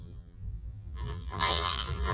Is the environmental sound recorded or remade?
remade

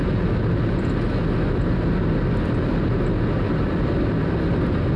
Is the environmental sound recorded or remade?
recorded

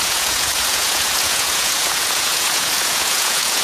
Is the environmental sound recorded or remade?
remade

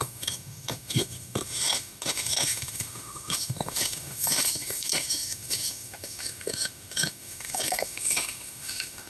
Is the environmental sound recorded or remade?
remade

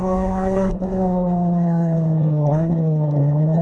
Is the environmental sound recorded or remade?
remade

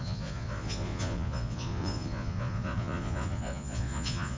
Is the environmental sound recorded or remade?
remade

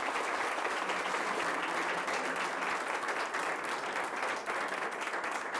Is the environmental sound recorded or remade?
recorded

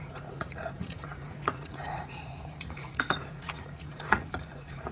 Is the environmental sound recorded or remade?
remade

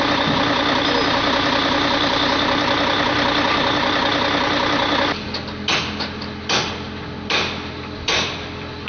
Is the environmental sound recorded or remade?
recorded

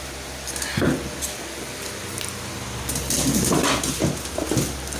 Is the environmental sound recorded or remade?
recorded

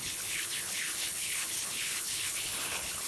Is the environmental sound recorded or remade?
remade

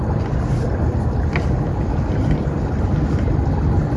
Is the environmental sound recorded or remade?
recorded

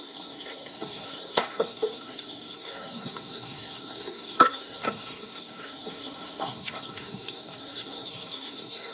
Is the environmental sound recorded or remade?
remade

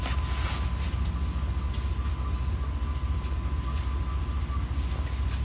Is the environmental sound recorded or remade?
recorded